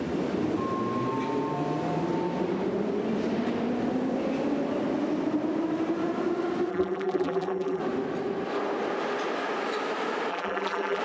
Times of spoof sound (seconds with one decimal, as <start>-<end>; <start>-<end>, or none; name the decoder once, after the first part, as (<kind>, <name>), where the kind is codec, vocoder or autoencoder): 6.7-7.8 (vocoder, BigVGAN v2); 10.3-11.0